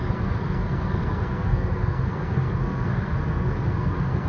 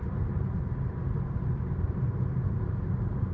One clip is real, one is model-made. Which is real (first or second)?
second